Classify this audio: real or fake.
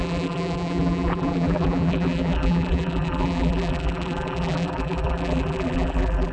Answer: fake